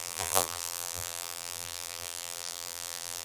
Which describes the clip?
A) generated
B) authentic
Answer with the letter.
A